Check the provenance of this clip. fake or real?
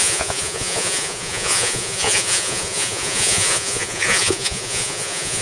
fake